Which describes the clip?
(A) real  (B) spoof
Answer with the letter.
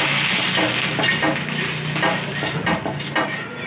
A